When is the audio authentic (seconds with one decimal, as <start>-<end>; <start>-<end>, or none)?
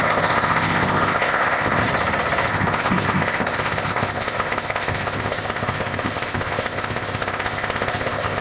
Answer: 1.8-2.5